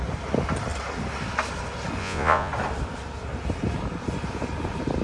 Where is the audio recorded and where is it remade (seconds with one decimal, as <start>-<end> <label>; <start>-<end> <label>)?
0.0-2.0 recorded; 2.0-2.5 remade; 2.5-5.0 recorded

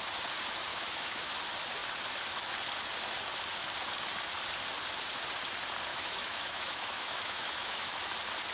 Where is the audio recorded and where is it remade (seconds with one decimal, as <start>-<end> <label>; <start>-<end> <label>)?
0.0-0.7 recorded; 0.7-1.4 remade; 1.4-5.9 recorded; 5.9-7.9 remade; 7.9-8.5 recorded

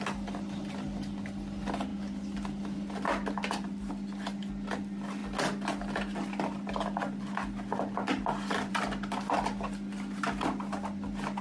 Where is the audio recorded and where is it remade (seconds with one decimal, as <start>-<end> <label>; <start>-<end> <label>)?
0.0-11.4 recorded

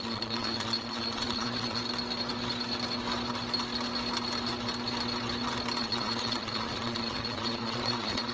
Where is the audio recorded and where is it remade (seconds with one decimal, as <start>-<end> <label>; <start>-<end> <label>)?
0.0-1.8 remade; 1.8-5.8 recorded; 5.8-8.3 remade

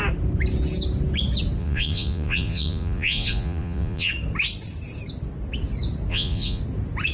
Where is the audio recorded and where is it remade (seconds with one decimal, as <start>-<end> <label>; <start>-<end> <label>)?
0.0-1.6 recorded; 1.6-4.1 remade; 4.1-6.1 recorded; 6.1-6.6 remade; 6.6-7.1 recorded

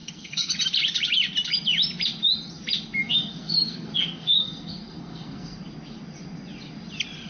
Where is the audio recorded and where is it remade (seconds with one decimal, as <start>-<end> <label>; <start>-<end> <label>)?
0.0-0.5 remade; 0.5-3.0 recorded; 3.0-5.6 remade; 5.6-7.3 recorded

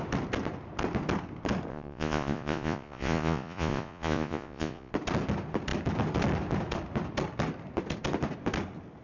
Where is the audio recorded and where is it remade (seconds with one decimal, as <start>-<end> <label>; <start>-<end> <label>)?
0.0-1.7 recorded; 1.7-4.9 remade; 4.9-9.0 recorded

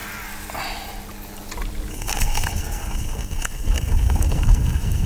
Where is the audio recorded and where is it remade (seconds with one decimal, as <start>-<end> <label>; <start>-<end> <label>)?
0.0-1.9 recorded; 1.9-5.1 remade